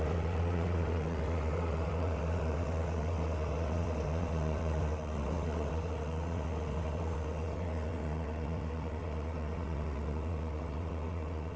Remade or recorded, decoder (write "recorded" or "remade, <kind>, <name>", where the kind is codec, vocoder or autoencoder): remade, vocoder, WaveNeXt